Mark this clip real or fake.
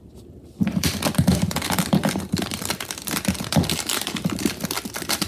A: fake